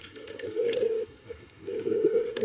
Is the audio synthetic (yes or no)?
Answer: yes